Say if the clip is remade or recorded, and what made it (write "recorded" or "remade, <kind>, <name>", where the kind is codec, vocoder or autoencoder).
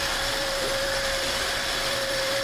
remade, vocoder, BigVGAN v2